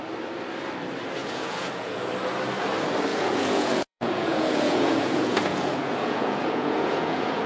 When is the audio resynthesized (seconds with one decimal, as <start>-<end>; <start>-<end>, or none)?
1.2-2.1; 3.1-7.5